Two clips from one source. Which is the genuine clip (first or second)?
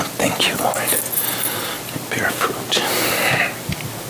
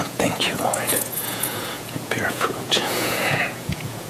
first